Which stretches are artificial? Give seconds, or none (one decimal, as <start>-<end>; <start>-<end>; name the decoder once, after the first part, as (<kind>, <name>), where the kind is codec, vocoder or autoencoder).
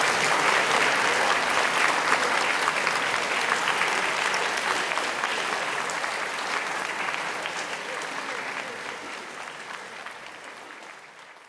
5.3-6.0 (vocoder, BigVGAN v2)